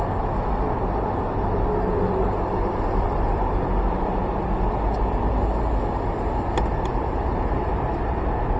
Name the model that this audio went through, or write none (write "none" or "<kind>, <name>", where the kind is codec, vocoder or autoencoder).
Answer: none